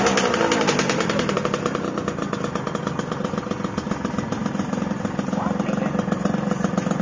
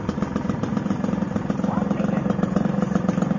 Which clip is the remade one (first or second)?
second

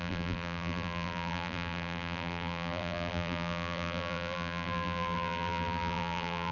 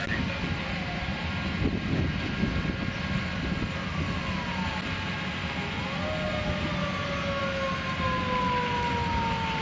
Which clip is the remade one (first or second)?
first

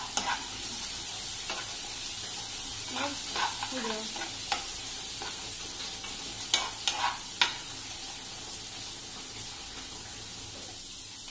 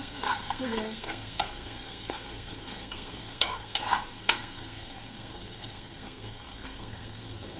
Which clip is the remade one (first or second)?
second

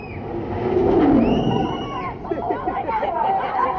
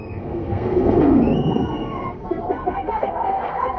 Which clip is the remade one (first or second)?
second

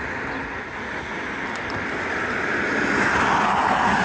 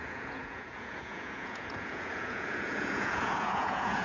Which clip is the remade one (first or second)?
second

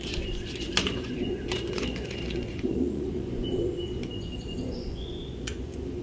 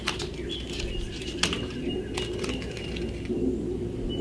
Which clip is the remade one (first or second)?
first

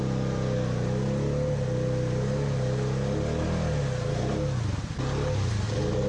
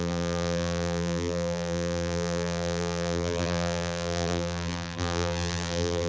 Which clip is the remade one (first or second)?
second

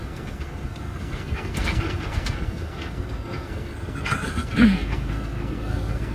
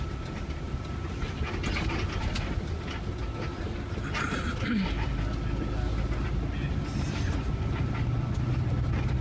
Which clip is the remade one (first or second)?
first